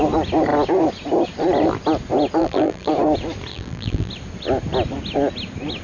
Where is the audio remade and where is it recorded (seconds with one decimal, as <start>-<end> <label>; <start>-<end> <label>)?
0.0-2.4 recorded; 2.4-2.9 remade; 2.9-3.5 recorded; 3.5-4.1 remade; 4.1-5.8 recorded